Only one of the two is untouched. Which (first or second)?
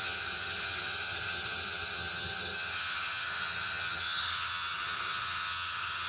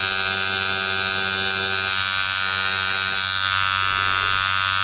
second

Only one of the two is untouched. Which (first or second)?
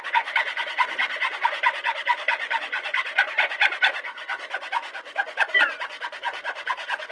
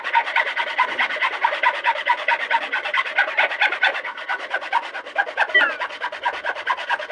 second